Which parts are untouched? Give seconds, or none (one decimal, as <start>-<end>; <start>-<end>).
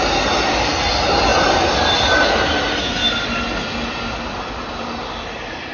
0.0-5.7